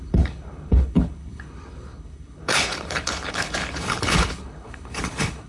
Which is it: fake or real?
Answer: fake